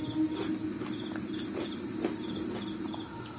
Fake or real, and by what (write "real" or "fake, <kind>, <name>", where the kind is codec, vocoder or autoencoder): real